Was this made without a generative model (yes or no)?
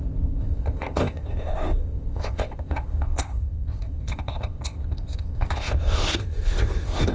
no